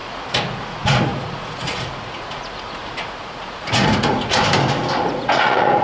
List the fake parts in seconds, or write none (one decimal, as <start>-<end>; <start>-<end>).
0.0-4.4; 5.1-5.8